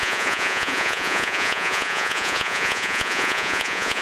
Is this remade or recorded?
remade